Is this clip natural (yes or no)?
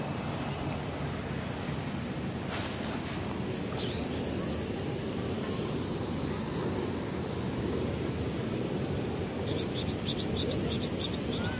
yes